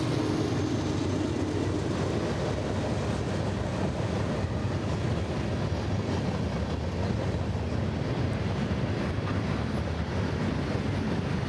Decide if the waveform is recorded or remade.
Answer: recorded